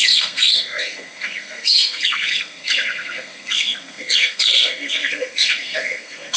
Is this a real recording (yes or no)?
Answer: no